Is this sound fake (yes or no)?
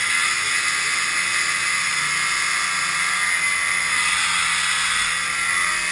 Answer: no